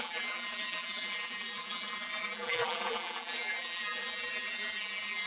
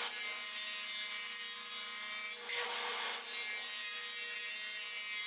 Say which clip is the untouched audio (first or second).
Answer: second